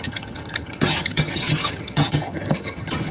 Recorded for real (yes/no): no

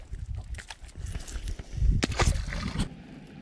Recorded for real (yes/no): yes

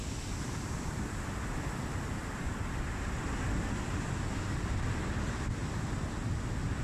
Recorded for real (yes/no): yes